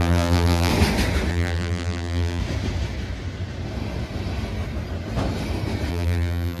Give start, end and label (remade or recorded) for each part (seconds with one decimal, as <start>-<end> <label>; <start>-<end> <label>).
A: 0.0-0.7 remade; 0.7-1.3 recorded; 1.3-2.4 remade; 2.4-5.9 recorded; 5.9-6.6 remade

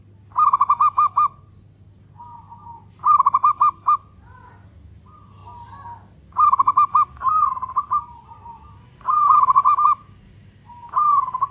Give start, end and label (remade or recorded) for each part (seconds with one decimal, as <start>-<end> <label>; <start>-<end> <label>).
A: 0.0-3.0 recorded; 3.0-4.7 remade; 4.7-5.4 recorded; 5.4-7.7 remade; 7.7-11.5 recorded

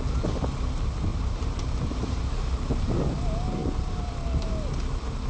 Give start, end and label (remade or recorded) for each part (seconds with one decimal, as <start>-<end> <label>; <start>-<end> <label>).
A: 0.0-1.1 recorded; 1.1-2.7 remade; 2.7-3.6 recorded; 3.6-4.5 remade; 4.5-5.3 recorded